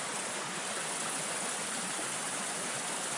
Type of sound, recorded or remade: remade